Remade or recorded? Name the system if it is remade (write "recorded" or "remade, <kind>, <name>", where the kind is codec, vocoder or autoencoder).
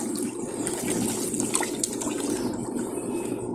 recorded